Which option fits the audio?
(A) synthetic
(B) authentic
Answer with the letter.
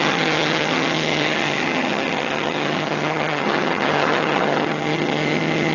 A